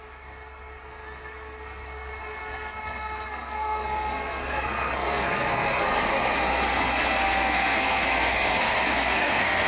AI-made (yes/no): yes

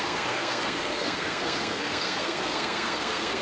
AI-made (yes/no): yes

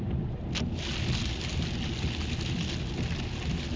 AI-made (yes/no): no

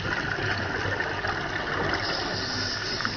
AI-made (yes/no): no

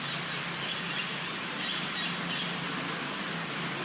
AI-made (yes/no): no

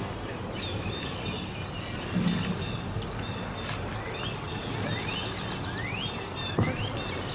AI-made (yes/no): no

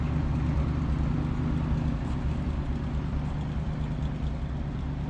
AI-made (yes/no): no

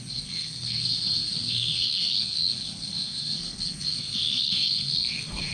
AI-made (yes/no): yes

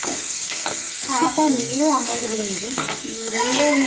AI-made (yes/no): yes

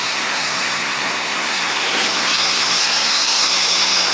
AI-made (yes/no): yes